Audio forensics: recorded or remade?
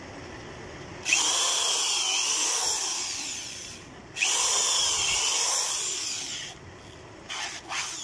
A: recorded